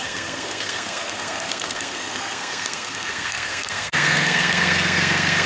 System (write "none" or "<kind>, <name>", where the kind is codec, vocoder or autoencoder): codec, SNAC